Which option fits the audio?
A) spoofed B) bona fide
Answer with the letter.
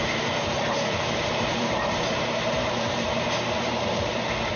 A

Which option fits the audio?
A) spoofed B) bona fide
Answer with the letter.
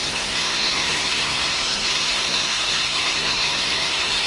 A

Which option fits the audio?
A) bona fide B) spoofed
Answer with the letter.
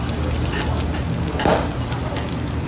A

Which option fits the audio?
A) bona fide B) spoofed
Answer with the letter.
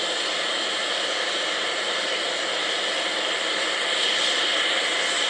A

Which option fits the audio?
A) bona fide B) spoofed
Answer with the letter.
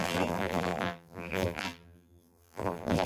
B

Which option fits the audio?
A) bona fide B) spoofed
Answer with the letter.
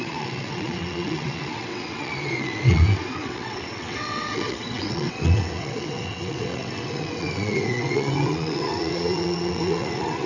B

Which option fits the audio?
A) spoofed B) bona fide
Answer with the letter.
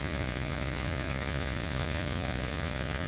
A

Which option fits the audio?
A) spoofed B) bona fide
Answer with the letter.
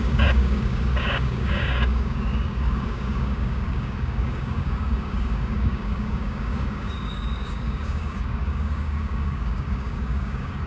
A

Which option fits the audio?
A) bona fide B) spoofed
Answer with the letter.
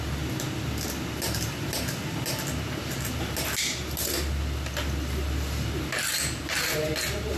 A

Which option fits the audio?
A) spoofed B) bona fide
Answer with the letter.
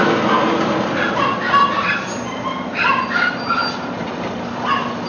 B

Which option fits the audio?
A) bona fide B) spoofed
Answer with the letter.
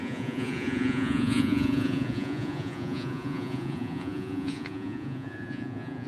B